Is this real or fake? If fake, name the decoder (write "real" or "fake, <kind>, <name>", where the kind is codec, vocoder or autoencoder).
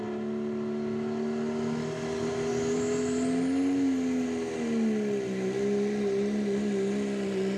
real